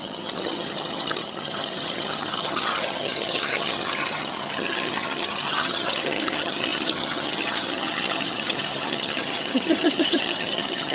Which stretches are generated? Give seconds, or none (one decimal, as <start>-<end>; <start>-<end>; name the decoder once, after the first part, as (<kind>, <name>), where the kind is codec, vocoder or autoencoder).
0.0-10.9 (vocoder, HiFi-GAN)